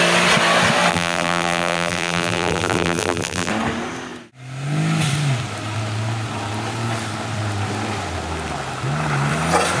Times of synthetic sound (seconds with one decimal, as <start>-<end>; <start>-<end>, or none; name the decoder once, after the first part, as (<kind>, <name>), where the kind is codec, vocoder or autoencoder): 0.9-3.5 (vocoder, BigVGAN v2)